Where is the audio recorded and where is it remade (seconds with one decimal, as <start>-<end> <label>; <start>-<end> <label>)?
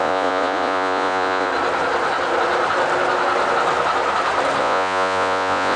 0.0-1.5 remade; 1.5-4.6 recorded; 4.6-5.8 remade